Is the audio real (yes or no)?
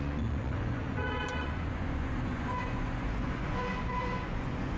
no